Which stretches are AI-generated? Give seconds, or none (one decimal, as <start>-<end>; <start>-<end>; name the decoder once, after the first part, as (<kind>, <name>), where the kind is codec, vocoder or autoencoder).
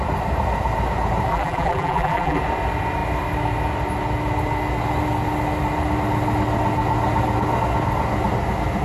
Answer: 1.3-2.4 (vocoder, BigVGAN v2)